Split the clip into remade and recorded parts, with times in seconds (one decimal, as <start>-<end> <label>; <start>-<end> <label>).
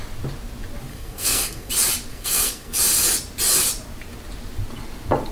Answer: 0.0-0.9 recorded; 0.9-1.7 remade; 1.7-2.1 recorded; 2.1-2.8 remade; 2.8-5.3 recorded